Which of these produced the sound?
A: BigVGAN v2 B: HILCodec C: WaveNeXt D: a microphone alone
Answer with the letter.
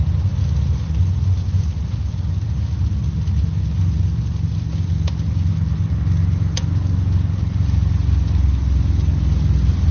D